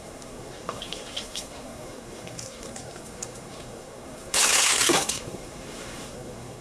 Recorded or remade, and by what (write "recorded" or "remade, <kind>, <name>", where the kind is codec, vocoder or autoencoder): remade, codec, SNAC